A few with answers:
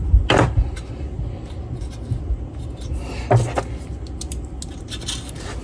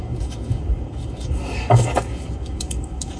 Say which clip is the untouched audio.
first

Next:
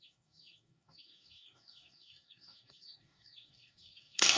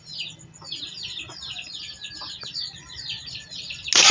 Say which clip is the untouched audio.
second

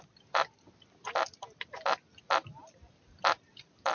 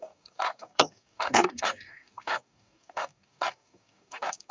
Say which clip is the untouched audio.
first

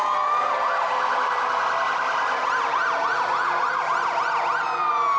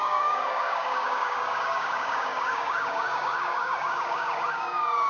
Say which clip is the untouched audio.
first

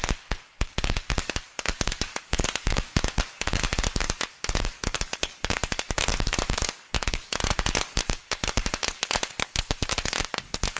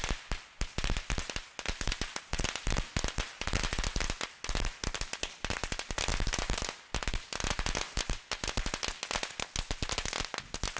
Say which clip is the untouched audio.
second